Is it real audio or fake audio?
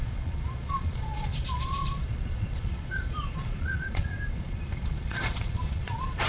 fake